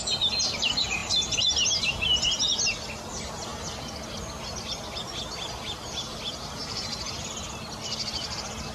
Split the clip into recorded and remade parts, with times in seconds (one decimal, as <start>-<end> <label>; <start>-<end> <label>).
0.0-8.7 recorded